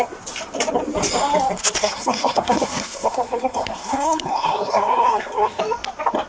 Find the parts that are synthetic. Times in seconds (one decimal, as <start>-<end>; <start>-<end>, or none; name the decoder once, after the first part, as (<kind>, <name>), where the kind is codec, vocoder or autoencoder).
1.8-5.6 (codec, SNAC)